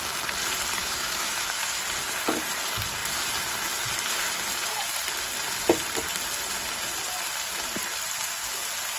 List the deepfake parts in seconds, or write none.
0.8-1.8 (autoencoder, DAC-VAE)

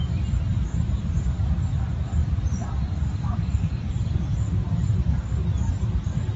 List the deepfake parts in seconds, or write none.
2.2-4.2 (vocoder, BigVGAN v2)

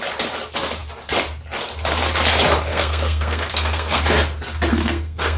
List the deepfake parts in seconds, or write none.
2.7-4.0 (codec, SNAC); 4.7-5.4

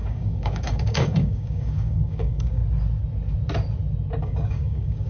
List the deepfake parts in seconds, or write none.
0.0-2.6 (codec, DAC); 4.2-5.1

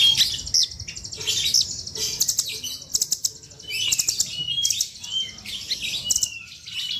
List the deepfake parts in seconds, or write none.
none

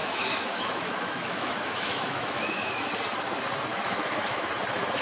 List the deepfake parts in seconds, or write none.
0.0-2.8 (autoencoder, DAC-VAE); 3.7-4.5

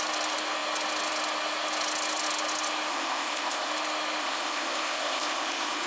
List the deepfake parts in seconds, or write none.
2.9-3.7 (codec, ZipCodec); 4.2-5.9